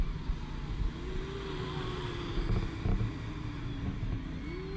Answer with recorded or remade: recorded